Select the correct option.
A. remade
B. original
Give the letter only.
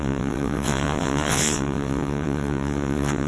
A